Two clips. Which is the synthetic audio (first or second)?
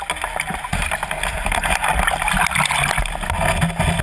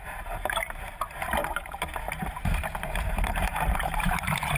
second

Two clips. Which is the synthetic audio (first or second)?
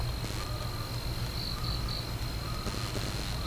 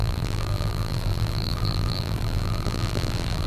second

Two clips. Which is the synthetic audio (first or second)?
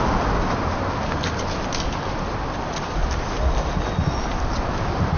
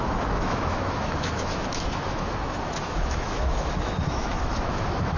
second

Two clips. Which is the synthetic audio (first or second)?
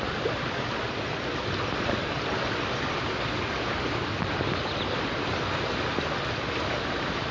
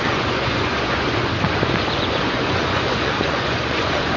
second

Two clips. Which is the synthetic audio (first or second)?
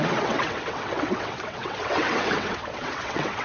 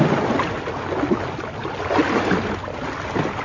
first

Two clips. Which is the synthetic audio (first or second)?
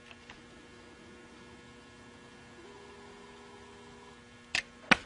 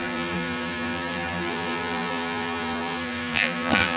second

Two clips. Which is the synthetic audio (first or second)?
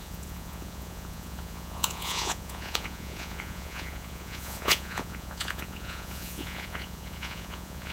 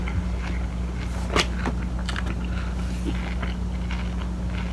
first